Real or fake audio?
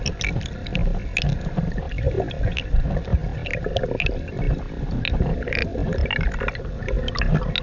real